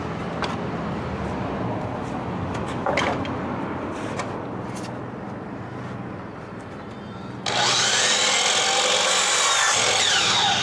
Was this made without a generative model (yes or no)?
yes